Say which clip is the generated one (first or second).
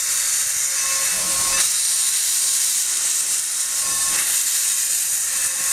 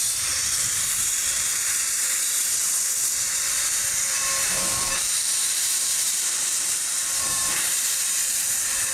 second